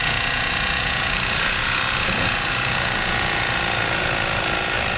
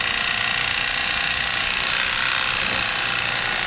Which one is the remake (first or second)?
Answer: first